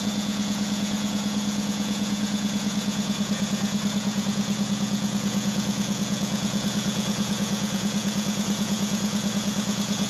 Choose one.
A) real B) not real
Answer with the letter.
B